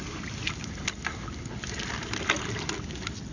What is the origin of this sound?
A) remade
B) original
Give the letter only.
B